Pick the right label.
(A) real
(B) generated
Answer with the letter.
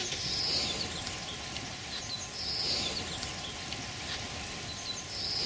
B